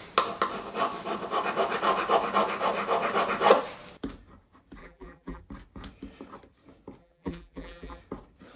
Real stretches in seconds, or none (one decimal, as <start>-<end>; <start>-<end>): 0.0-4.8; 5.4-7.0; 8.0-8.6